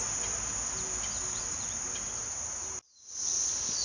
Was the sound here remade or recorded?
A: recorded